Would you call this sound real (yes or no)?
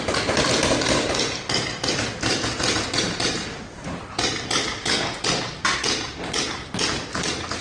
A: yes